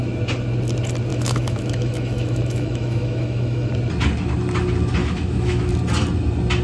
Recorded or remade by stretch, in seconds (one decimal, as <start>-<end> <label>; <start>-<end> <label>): 0.0-1.1 recorded; 1.1-3.7 remade; 3.7-5.0 recorded; 5.0-5.7 remade; 5.7-6.6 recorded